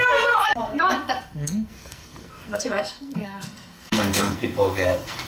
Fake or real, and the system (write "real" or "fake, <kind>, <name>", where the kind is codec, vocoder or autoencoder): fake, codec, SNAC